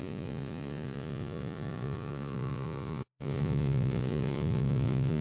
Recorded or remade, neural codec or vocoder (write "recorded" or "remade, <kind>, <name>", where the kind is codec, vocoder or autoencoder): remade, vocoder, Vocos